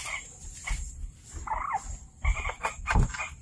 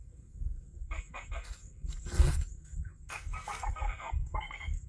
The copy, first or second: second